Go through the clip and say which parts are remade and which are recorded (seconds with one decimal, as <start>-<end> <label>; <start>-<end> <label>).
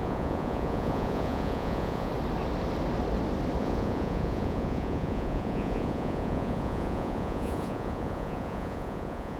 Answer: 0.0-2.1 remade; 2.1-3.6 recorded; 3.6-9.4 remade